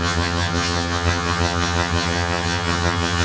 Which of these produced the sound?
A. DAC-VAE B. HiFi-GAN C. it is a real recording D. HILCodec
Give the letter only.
B